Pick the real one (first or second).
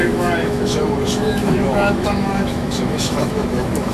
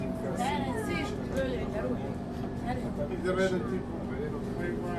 second